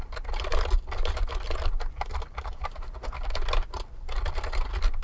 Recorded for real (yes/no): yes